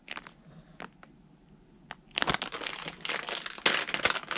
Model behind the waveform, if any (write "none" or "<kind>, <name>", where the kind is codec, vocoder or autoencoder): none